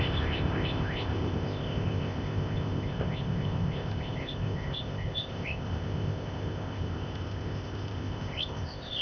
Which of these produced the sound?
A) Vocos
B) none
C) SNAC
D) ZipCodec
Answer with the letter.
D